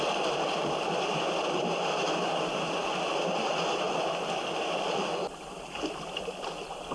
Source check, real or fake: real